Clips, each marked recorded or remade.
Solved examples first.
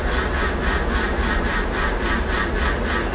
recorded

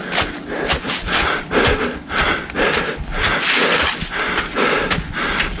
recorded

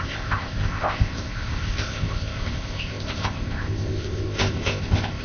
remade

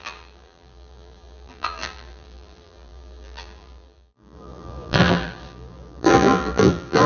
remade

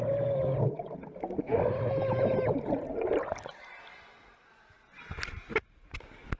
recorded